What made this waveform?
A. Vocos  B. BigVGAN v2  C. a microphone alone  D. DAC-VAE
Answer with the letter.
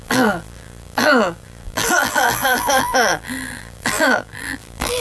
B